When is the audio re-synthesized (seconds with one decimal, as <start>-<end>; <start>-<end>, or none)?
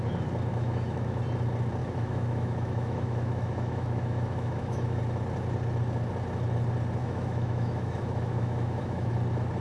0.5-1.2; 1.8-5.0; 7.0-9.1